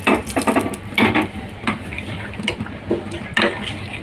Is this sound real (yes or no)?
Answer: yes